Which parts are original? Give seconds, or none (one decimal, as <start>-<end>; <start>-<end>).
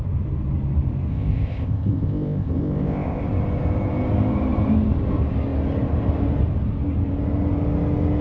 0.0-1.1; 3.2-8.2